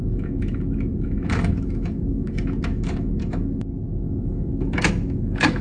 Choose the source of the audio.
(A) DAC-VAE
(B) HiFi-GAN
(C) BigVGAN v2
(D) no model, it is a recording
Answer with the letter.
A